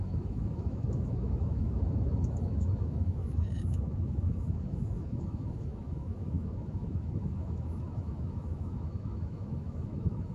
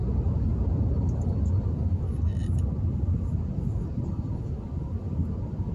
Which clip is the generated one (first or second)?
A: first